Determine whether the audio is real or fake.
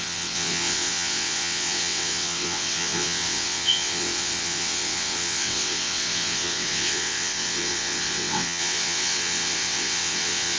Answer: fake